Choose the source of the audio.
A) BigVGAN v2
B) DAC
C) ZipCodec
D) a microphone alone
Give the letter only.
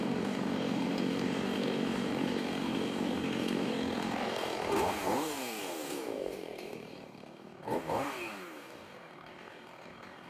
B